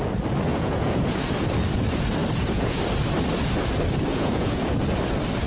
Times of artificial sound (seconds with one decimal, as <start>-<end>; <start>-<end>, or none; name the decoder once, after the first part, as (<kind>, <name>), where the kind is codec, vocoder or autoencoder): 0.5-1.2 (vocoder, Vocos); 2.2-2.8; 4.1-4.8